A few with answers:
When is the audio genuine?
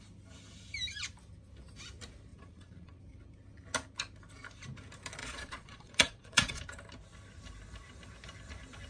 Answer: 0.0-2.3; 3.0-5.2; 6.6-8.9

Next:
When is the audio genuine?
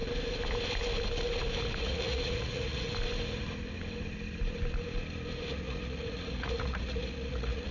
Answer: 0.0-1.8; 2.9-5.5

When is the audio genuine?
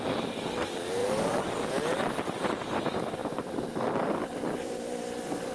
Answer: 0.0-5.5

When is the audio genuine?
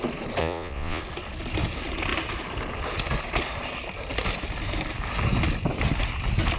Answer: 0.0-0.4; 1.0-6.6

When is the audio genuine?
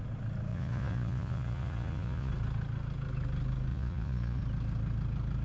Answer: 0.0-0.5; 2.3-3.7; 4.4-5.4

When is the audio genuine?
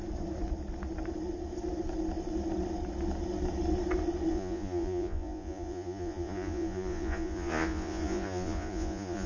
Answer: 0.0-4.3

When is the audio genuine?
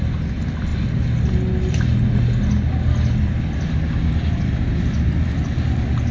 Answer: 0.0-6.1